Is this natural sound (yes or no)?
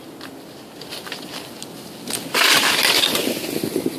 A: yes